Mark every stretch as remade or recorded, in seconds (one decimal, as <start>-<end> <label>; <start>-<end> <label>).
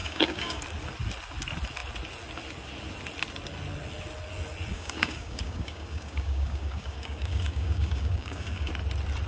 0.0-0.6 remade; 0.6-4.7 recorded; 4.7-8.7 remade; 8.7-9.3 recorded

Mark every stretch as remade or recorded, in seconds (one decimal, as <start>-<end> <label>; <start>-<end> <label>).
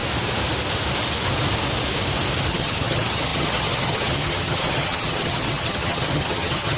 0.0-2.5 recorded; 2.5-6.8 remade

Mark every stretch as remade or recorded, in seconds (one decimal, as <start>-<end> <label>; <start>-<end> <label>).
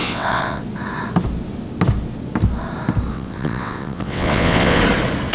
0.0-0.6 remade; 0.6-3.1 recorded; 3.1-4.8 remade; 4.8-5.3 recorded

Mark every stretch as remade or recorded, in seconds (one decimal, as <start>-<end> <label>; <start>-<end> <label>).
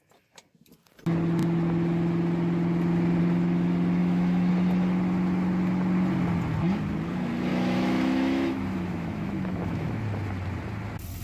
0.0-4.0 recorded; 4.0-4.5 remade; 4.5-7.5 recorded; 7.5-10.0 remade; 10.0-11.2 recorded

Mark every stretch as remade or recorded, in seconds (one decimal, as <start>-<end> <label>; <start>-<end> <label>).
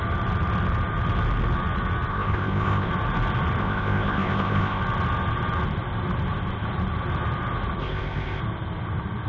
0.0-2.1 recorded; 2.1-2.9 remade; 2.9-3.6 recorded; 3.6-4.8 remade; 4.8-7.8 recorded; 7.8-8.4 remade; 8.4-9.3 recorded